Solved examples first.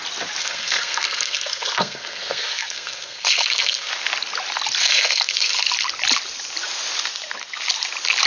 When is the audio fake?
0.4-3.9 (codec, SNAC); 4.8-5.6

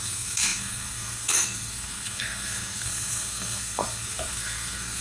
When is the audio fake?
0.0-5.0 (codec, SNAC)

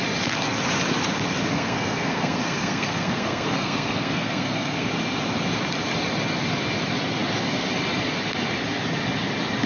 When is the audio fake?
1.5-4.9 (codec, SNAC)

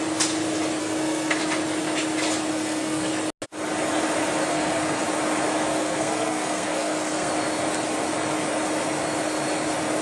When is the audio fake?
0.8-1.4 (codec, SNAC); 2.5-3.1; 4.5-5.0; 5.8-7.3

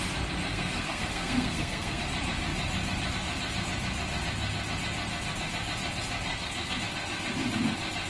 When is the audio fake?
0.5-2.0 (codec, SNAC); 6.3-6.8

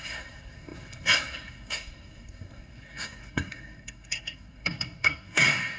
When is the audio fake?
0.0-5.8 (codec, SNAC)

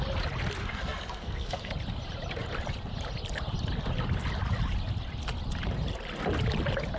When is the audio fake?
0.6-1.7 (codec, SNAC)